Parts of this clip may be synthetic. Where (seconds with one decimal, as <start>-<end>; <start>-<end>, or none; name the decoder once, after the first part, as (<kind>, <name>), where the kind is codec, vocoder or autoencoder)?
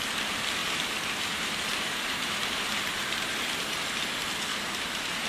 0.6-3.8 (vocoder, BigVGAN v2); 4.5-5.3